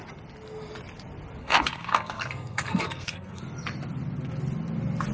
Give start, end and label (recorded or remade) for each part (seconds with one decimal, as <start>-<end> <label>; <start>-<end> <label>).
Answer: 0.0-1.4 recorded; 1.4-3.4 remade; 3.4-5.1 recorded

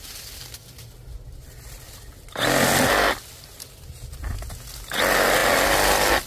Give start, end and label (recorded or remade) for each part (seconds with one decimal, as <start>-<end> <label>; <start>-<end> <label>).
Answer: 0.0-6.3 recorded

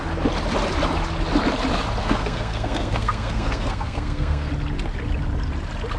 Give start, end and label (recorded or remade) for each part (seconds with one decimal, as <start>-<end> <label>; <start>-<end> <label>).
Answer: 0.0-2.0 recorded; 2.0-4.5 remade; 4.5-6.0 recorded

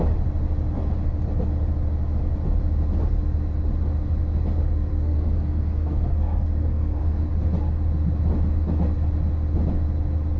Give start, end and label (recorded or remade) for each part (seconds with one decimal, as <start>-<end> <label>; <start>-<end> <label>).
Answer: 0.0-4.9 recorded; 4.9-7.3 remade; 7.3-10.4 recorded

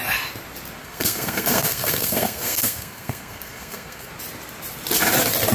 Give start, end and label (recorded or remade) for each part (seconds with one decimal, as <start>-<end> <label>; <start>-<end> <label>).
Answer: 0.0-0.8 recorded; 0.8-4.1 remade; 4.1-5.5 recorded

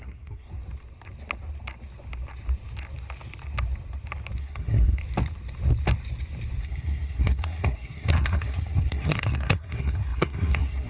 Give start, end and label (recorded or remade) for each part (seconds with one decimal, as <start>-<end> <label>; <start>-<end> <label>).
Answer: 0.0-0.5 remade; 0.5-4.4 recorded; 4.4-5.0 remade; 5.0-6.6 recorded; 6.6-10.9 remade

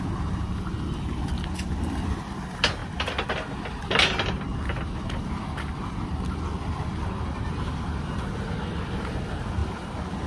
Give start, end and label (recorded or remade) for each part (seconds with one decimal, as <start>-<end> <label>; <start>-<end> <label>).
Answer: 0.0-10.3 recorded